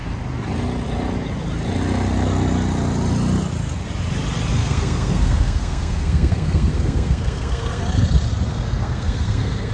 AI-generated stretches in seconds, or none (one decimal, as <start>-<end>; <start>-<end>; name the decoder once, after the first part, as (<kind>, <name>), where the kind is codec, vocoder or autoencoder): 4.6-7.8 (codec, SNAC); 8.5-9.7